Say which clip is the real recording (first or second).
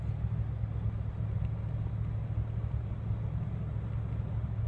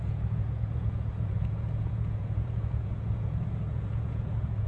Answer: first